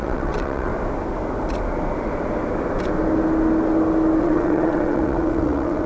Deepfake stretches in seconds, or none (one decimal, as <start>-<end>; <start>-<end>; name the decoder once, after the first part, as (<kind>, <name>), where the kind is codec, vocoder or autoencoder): 0.0-0.7 (vocoder, WaveNeXt); 4.2-5.9